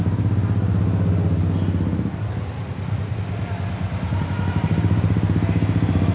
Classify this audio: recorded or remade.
recorded